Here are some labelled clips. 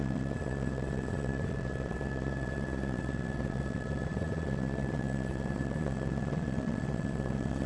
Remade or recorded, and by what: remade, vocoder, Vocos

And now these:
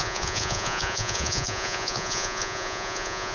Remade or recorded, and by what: remade, vocoder, Vocos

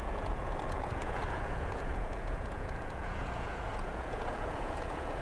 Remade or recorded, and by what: remade, vocoder, Vocos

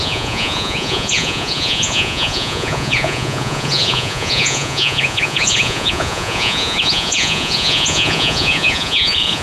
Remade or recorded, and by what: remade, vocoder, Vocos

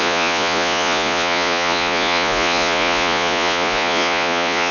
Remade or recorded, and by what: remade, vocoder, Vocos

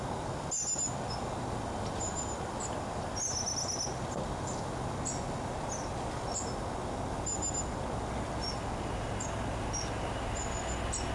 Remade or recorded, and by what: recorded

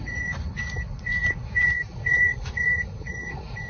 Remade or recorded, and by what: remade, vocoder, Vocos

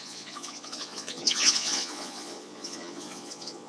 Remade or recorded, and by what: remade, vocoder, Vocos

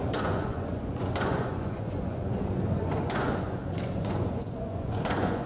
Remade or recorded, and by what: remade, vocoder, Vocos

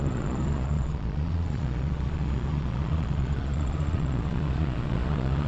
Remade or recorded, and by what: remade, vocoder, Vocos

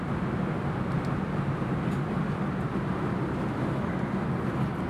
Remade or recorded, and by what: recorded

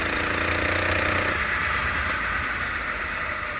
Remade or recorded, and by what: recorded